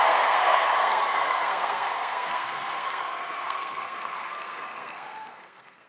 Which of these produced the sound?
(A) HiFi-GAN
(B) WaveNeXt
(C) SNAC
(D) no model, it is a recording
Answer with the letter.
C